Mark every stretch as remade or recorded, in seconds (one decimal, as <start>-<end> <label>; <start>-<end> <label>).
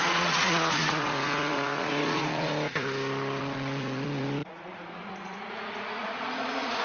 0.0-2.5 remade; 2.5-3.4 recorded; 3.4-6.8 remade